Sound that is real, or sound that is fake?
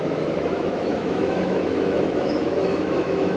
fake